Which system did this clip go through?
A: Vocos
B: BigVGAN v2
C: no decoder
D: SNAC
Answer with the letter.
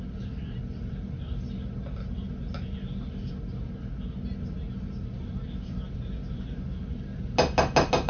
C